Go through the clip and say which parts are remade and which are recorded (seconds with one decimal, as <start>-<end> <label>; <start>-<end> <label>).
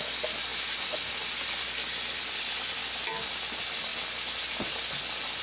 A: 0.0-5.4 recorded